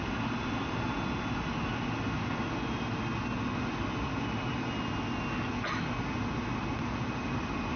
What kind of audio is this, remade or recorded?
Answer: recorded